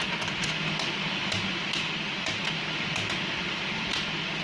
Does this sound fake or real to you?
real